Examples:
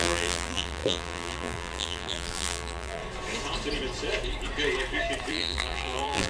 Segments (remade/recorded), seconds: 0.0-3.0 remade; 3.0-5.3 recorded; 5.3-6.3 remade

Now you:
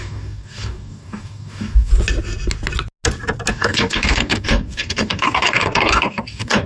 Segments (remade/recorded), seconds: 0.0-1.9 remade; 1.9-3.5 recorded; 3.5-6.7 remade